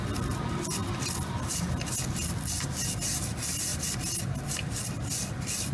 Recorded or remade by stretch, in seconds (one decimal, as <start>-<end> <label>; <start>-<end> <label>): 0.0-5.7 recorded